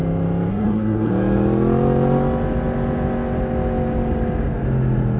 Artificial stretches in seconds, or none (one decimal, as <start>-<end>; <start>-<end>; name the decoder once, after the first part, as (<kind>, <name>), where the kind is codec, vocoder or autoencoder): 0.5-1.1 (codec, SNAC)